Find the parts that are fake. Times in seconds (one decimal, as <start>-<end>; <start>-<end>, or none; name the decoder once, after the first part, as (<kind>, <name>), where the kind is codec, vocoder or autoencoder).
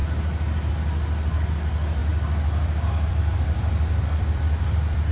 2.0-5.1 (vocoder, BigVGAN v2)